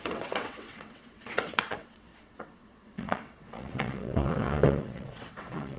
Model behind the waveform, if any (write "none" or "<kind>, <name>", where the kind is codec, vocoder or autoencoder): vocoder, WaveNeXt